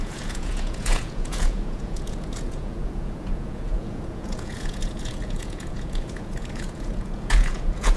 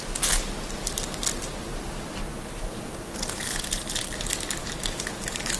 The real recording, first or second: second